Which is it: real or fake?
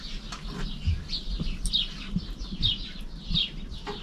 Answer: real